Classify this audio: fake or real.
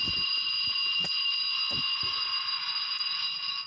real